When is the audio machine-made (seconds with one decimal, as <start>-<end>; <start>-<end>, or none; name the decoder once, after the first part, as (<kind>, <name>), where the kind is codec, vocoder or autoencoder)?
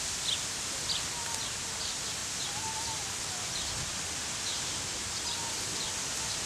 none